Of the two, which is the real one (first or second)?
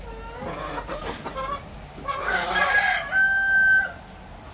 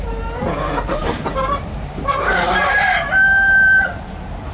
first